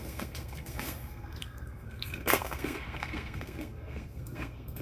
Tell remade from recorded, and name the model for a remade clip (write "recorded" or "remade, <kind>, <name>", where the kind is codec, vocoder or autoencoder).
remade, codec, SNAC